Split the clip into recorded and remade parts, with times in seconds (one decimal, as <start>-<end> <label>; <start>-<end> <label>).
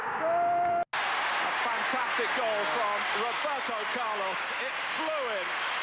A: 0.0-5.8 recorded